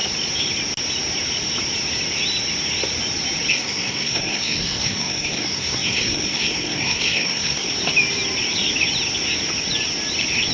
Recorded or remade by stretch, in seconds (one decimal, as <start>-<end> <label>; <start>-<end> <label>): 0.0-3.5 recorded; 3.5-7.7 remade; 7.7-10.5 recorded

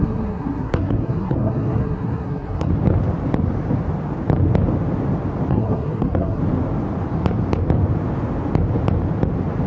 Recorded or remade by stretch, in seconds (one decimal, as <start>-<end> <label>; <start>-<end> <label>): 0.0-2.7 remade; 2.7-5.5 recorded; 5.5-6.4 remade; 6.4-9.7 recorded

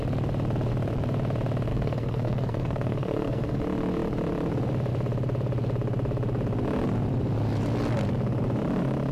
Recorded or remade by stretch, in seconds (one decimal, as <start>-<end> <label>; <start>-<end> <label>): 0.0-1.7 recorded; 1.7-3.6 remade; 3.6-9.1 recorded